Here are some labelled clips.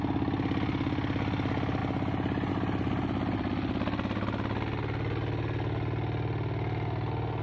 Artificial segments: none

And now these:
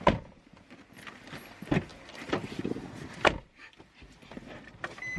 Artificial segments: none